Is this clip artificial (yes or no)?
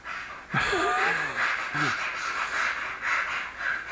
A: no